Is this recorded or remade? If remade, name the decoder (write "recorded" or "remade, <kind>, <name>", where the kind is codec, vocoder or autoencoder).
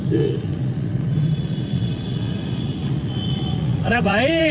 remade, vocoder, Vocos